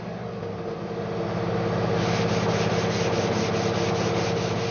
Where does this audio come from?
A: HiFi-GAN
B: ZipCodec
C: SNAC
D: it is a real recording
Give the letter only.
D